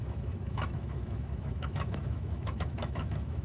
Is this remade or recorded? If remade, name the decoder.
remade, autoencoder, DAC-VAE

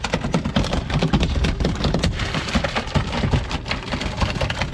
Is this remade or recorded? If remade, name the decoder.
recorded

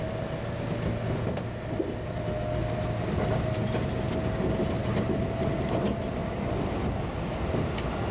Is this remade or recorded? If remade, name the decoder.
recorded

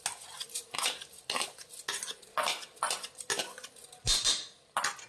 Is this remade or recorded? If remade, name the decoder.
recorded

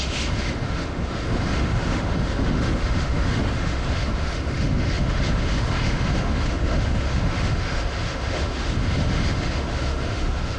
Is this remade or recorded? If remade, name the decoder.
remade, autoencoder, DAC-VAE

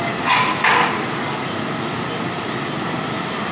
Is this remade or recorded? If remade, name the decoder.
recorded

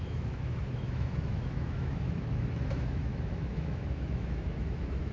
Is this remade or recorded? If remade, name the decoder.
remade, autoencoder, DAC-VAE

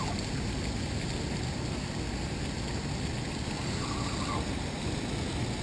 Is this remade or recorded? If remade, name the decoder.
recorded